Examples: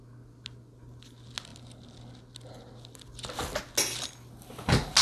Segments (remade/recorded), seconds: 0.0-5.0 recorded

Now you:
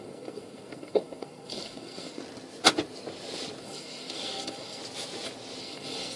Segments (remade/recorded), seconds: 0.0-2.2 remade; 2.2-3.6 recorded; 3.6-4.8 remade; 4.8-5.6 recorded; 5.6-6.2 remade

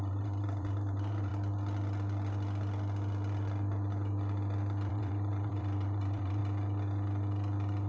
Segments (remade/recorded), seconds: 0.0-1.3 remade; 1.3-4.9 recorded; 4.9-6.4 remade; 6.4-7.9 recorded